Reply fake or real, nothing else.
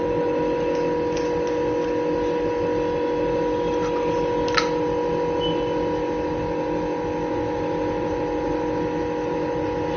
real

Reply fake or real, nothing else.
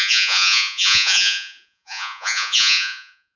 fake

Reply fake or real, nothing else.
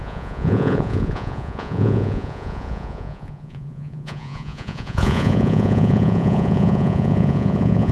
fake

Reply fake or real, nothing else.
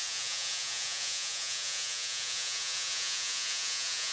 fake